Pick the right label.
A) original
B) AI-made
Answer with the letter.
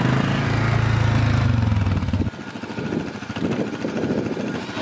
A